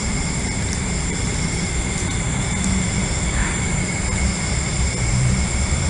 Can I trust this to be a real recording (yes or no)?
no